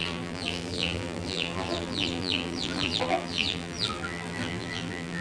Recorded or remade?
remade